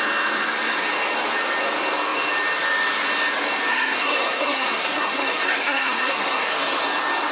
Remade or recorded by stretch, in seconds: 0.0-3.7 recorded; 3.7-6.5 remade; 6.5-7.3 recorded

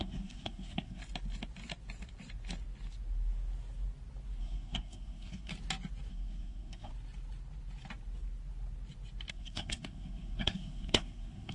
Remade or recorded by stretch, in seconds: 0.0-1.0 remade; 1.0-4.4 recorded; 4.4-5.5 remade; 5.5-6.1 recorded; 6.1-6.9 remade; 6.9-9.3 recorded; 9.3-11.5 remade